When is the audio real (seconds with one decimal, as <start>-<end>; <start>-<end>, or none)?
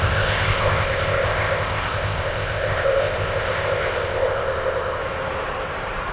5.0-6.1